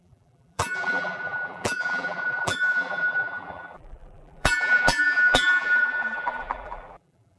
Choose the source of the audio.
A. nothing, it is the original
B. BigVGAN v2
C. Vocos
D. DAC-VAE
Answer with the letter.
B